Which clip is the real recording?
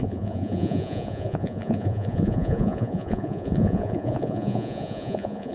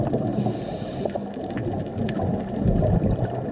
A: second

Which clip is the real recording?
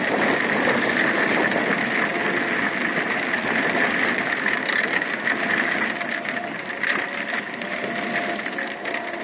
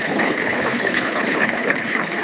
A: first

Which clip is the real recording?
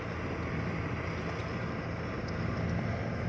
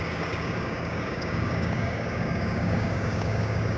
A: first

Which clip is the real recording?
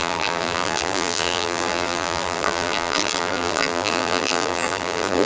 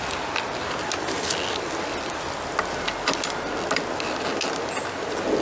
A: second